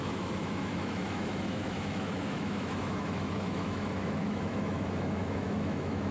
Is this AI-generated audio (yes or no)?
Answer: yes